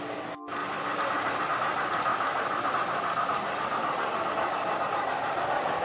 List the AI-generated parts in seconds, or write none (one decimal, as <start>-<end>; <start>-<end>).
none